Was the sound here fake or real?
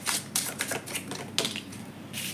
real